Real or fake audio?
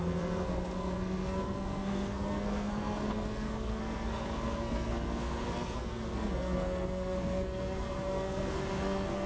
fake